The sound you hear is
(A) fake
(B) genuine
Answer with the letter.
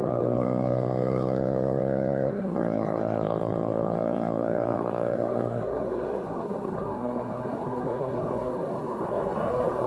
A